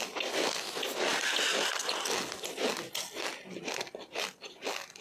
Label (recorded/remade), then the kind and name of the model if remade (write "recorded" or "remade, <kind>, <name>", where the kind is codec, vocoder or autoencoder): recorded